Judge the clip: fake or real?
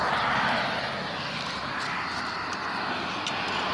real